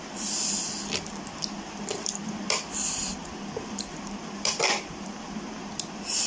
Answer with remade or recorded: remade